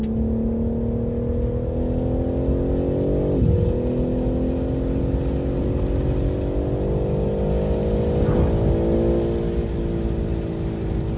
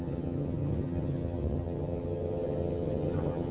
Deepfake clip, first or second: second